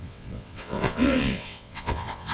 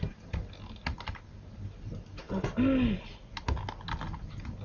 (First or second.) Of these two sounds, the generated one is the first